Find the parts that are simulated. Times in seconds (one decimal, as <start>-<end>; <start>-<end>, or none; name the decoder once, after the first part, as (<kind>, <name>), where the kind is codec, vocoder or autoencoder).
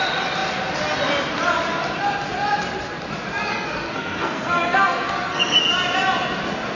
3.5-5.6 (codec, SNAC)